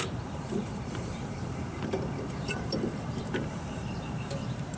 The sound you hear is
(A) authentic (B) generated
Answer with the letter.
B